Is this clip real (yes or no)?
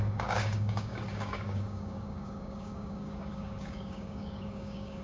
no